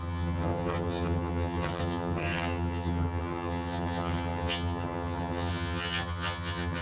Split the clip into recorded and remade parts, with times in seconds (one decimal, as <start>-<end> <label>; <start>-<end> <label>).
0.0-6.8 remade